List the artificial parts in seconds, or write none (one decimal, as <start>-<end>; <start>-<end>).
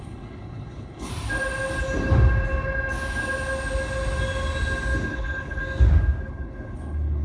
0.0-1.1; 5.1-5.6; 6.3-7.2